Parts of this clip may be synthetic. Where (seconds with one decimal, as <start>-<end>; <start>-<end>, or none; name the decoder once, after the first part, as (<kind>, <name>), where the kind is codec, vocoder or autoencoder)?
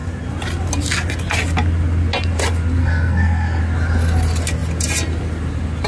2.8-3.6 (codec, SNAC)